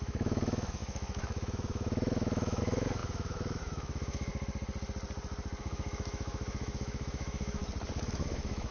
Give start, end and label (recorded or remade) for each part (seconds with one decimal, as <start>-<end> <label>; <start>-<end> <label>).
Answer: 0.0-4.3 remade; 4.3-5.6 recorded; 5.6-7.6 remade; 7.6-8.1 recorded; 8.1-8.7 remade